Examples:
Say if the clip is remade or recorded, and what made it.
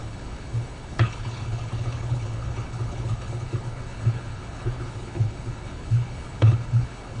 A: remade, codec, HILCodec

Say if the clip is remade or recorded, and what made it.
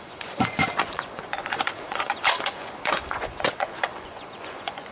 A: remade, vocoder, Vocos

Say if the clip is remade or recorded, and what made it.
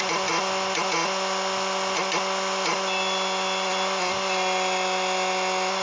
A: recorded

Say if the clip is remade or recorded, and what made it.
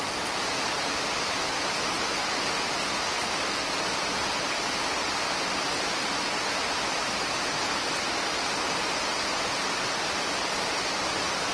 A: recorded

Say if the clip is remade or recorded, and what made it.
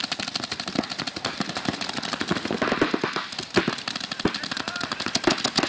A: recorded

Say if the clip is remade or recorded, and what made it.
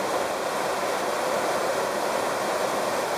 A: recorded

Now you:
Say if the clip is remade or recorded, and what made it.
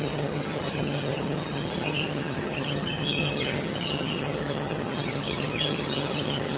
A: remade, vocoder, HiFi-GAN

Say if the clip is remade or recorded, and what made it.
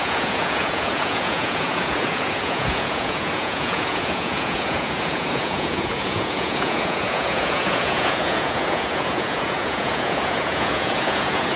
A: remade, vocoder, Vocos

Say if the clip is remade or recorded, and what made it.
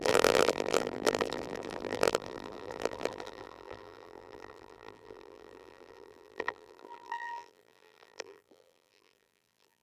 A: remade, vocoder, BigVGAN v2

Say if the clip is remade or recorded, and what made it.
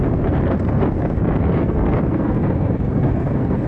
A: remade, codec, SNAC